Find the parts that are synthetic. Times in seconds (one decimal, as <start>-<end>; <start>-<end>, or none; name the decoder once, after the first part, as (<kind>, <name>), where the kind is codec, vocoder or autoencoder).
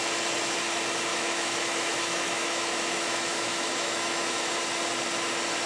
1.1-4.5 (autoencoder, DAC-VAE)